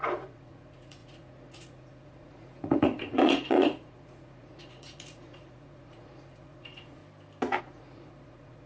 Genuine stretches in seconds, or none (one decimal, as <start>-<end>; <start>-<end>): 7.0-7.6